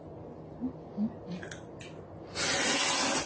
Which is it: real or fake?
real